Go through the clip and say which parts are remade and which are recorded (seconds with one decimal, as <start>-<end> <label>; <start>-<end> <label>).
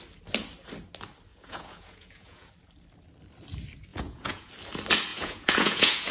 0.0-1.3 recorded; 1.3-2.5 remade; 2.5-3.9 recorded; 3.9-4.5 remade; 4.5-5.1 recorded; 5.1-6.1 remade